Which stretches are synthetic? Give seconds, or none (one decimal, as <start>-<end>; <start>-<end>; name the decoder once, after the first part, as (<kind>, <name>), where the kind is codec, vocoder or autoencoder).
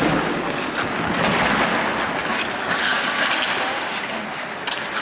none